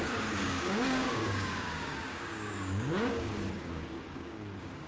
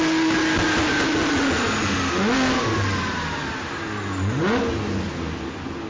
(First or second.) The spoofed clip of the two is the first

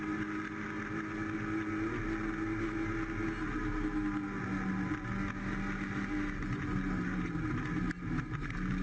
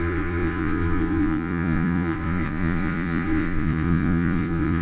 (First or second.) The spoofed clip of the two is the second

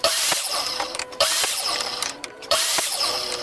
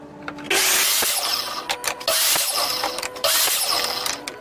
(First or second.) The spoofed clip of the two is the first